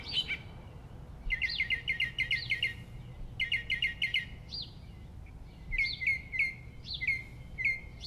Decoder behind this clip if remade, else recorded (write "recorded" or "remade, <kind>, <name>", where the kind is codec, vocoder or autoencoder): recorded